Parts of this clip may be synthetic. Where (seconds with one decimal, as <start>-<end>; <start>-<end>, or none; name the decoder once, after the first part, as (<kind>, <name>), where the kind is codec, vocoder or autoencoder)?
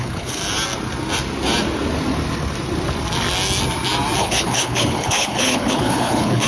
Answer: 0.0-0.4 (codec, HILCodec); 4.2-6.5